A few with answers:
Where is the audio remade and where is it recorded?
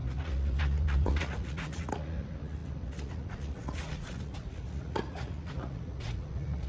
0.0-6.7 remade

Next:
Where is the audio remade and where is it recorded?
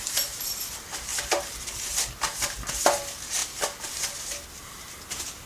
0.0-5.5 recorded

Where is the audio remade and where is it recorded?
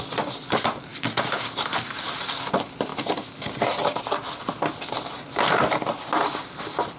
0.0-7.0 recorded